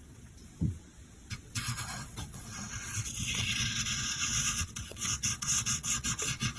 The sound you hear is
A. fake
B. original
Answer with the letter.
A